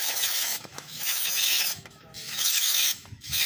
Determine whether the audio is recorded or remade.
remade